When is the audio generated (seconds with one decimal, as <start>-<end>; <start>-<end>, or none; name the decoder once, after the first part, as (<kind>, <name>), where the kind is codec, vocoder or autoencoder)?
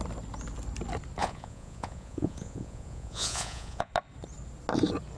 1.2-3.9 (vocoder, Vocos)